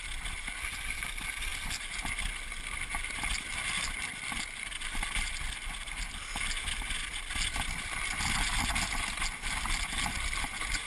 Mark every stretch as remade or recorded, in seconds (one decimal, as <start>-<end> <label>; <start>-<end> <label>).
0.0-10.9 recorded